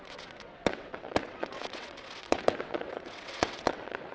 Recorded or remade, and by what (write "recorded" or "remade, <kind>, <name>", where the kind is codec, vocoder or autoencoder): remade, vocoder, WaveNeXt